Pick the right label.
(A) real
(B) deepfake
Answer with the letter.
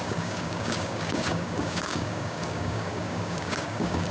B